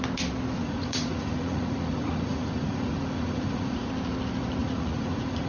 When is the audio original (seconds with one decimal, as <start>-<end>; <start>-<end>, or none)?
0.0-0.6; 3.9-4.6